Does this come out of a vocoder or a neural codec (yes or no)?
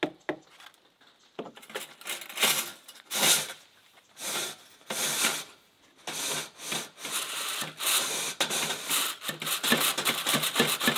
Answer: no